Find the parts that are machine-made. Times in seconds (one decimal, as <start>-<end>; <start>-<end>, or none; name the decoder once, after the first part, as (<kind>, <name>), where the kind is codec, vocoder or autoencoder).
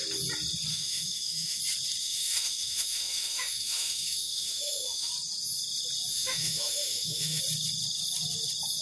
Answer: 0.7-1.6 (autoencoder, DAC-VAE); 2.0-5.1; 6.1-7.4